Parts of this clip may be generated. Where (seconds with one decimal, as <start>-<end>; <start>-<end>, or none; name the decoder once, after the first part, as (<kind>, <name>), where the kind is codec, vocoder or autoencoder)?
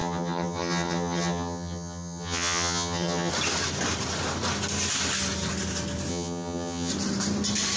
0.0-3.3 (vocoder, HiFi-GAN); 6.1-6.9